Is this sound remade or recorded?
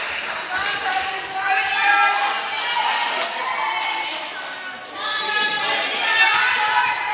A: recorded